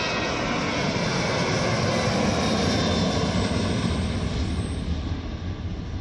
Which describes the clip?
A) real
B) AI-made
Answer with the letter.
A